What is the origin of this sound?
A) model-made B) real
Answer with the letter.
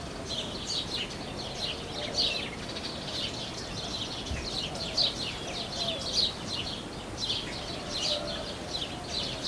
B